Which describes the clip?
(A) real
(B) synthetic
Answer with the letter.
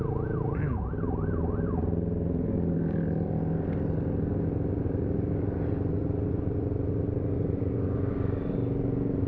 A